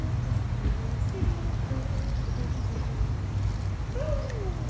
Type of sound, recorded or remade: recorded